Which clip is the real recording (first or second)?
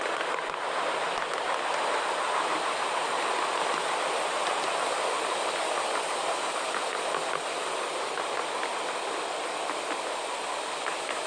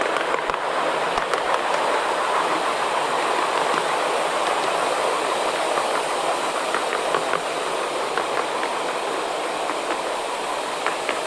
first